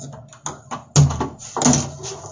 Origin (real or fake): real